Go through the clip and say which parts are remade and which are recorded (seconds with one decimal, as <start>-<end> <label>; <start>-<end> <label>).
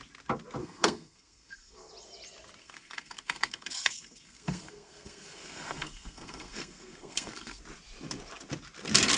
0.0-0.6 recorded; 0.6-1.9 remade; 1.9-2.6 recorded; 2.6-7.6 remade; 7.6-9.2 recorded